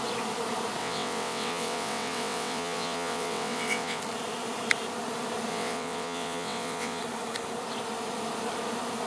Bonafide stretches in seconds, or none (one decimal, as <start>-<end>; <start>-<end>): 0.0-0.8; 4.0-5.5; 7.0-9.1